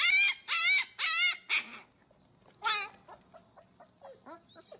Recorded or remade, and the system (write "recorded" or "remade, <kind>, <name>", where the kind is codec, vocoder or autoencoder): recorded